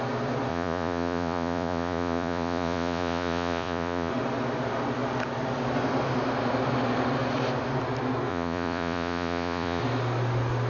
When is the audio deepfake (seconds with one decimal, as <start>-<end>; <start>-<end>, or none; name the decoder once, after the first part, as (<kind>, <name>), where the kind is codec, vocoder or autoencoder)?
0.5-4.1 (vocoder, Vocos); 8.3-9.8